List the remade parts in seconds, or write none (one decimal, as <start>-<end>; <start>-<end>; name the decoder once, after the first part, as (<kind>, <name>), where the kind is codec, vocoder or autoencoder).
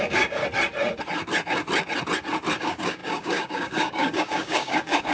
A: 0.0-0.4 (codec, DAC); 2.6-5.1